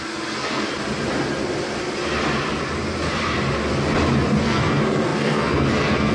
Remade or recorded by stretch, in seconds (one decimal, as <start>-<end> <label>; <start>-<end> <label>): 0.0-0.7 remade; 0.7-4.4 recorded; 4.4-6.1 remade